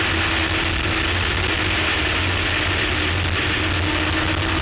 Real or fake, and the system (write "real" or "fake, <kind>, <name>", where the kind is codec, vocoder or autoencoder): real